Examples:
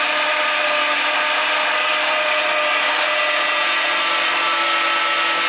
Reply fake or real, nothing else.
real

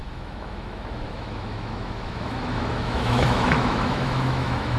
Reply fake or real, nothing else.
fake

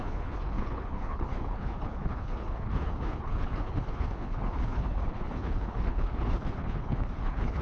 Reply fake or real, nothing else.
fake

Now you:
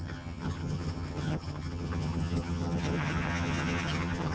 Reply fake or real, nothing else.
fake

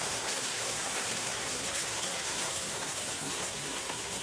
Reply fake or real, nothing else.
fake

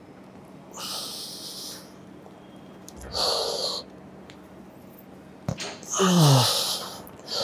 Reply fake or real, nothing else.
real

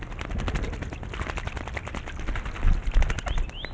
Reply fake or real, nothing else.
real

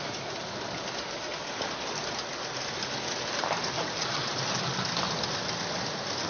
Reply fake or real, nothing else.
real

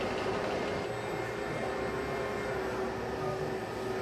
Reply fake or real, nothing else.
real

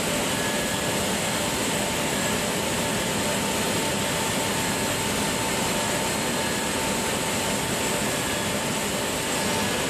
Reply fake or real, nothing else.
real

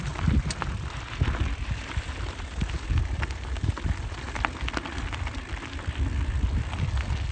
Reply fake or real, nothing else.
real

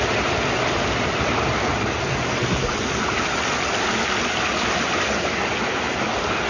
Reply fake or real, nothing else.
real